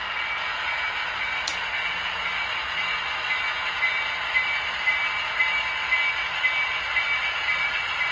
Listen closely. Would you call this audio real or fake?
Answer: real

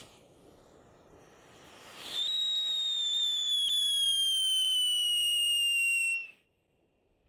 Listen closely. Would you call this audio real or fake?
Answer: fake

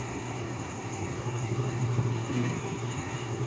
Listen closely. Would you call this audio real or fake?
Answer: fake